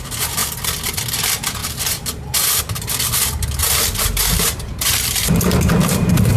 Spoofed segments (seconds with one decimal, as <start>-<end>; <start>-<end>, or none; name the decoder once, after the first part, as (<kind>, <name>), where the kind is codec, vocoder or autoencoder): 0.4-1.0 (vocoder, BigVGAN v2); 3.6-5.8